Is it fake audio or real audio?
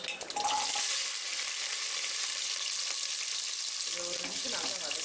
real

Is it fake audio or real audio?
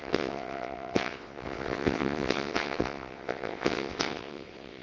fake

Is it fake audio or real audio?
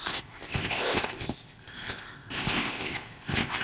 fake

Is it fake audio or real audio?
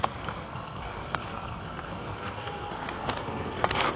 fake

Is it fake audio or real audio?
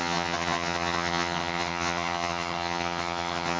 fake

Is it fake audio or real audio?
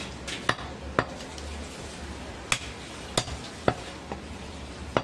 real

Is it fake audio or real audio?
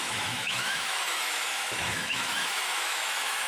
fake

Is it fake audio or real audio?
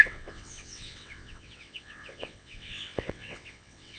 fake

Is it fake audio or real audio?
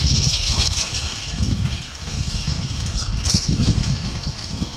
fake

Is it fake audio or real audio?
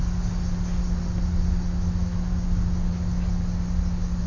real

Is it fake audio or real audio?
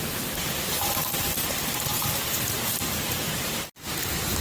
real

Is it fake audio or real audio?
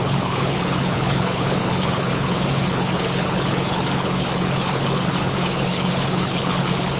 fake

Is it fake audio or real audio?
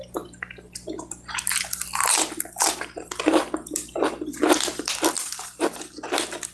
real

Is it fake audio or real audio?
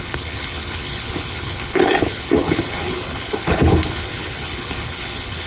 fake